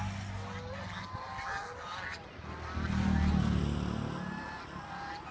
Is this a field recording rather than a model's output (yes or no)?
yes